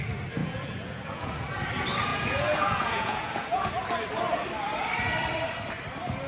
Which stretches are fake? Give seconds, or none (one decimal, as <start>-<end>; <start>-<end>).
0.4-1.4; 2.1-3.7

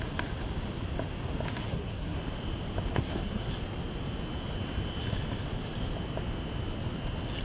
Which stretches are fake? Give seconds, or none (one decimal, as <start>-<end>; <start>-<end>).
1.6-2.2; 2.9-3.5

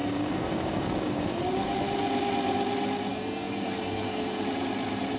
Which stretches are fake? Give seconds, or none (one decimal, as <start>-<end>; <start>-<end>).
0.0-1.4; 3.1-4.4

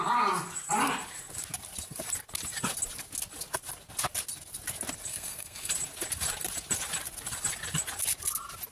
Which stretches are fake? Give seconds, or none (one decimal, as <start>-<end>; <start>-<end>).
5.1-5.7

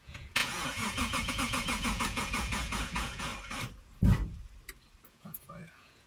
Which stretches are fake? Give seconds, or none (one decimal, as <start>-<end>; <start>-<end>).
0.0-3.3; 5.1-6.1

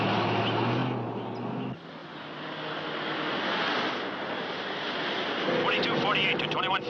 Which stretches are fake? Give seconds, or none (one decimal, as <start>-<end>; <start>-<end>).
none

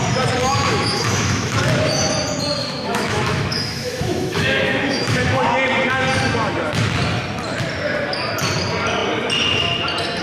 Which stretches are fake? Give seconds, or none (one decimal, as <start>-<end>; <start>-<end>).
0.4-1.9; 2.6-5.5

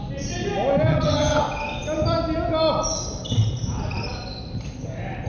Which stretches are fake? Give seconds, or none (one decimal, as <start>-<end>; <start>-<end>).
0.9-1.4